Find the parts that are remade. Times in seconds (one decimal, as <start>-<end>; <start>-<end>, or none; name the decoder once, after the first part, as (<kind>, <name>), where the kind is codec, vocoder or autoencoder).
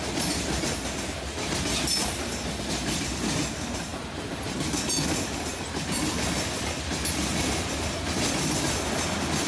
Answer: none